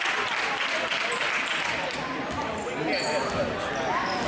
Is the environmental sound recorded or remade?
recorded